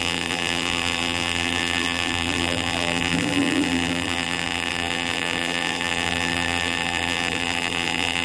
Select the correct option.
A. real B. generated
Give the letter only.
B